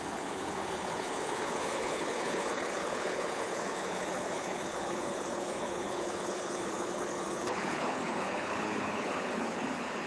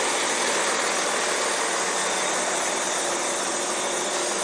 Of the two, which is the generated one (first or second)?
first